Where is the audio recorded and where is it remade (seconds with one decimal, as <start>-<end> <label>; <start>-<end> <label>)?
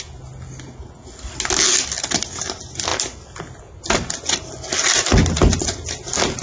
0.0-6.4 recorded